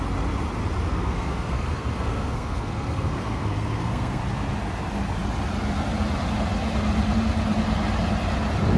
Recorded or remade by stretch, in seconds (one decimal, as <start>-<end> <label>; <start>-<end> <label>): 0.0-0.9 recorded; 0.9-4.2 remade; 4.2-8.8 recorded